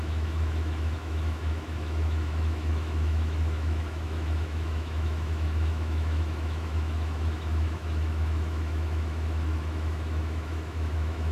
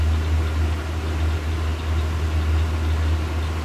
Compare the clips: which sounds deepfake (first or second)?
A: first